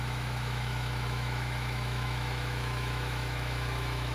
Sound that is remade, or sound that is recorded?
remade